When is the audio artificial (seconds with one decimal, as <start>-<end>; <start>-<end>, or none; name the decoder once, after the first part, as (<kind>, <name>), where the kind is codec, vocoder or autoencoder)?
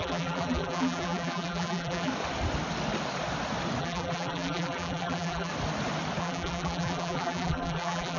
0.0-2.1 (vocoder, BigVGAN v2); 3.8-5.5; 6.2-8.2